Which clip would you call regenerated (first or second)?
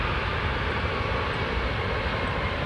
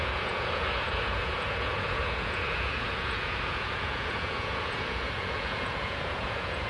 second